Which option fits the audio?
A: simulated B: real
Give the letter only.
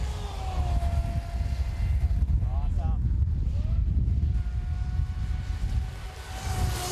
B